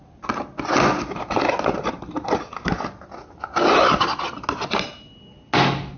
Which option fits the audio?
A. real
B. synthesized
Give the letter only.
A